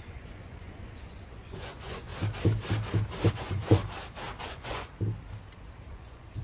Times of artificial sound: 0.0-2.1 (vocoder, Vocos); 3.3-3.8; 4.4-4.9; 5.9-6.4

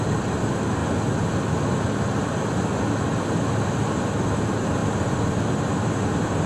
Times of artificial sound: 0.0-0.8 (vocoder, BigVGAN v2); 4.3-4.8; 5.6-6.5

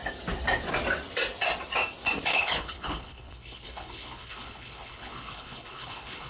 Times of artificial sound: 2.3-6.3 (codec, HILCodec)